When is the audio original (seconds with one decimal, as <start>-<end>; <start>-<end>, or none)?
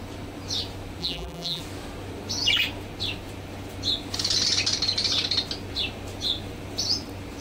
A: 0.0-1.0; 1.6-7.4